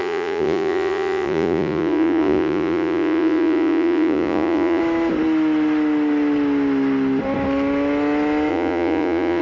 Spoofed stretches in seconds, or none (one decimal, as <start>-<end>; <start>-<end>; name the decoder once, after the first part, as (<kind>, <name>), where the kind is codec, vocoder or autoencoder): 0.0-4.8 (vocoder, Vocos); 8.5-9.4